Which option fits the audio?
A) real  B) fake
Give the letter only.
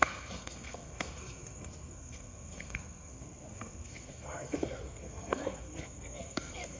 B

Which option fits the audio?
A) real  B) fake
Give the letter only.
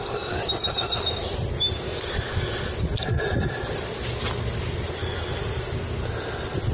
A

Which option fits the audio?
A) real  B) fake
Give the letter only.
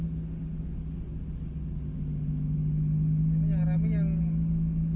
A